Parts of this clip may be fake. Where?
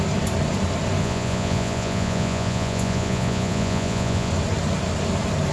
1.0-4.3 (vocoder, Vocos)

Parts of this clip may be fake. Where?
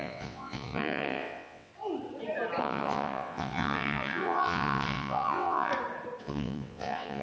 0.0-1.7 (vocoder, WaveNeXt); 2.6-5.7; 6.2-7.2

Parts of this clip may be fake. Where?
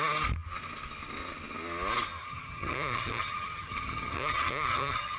2.2-5.2 (vocoder, HiFi-GAN)